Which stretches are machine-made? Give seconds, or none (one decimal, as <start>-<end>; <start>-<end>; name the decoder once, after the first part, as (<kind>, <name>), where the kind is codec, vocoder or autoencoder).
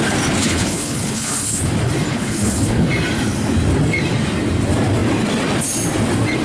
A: 0.4-1.6 (codec, HILCodec); 2.1-2.9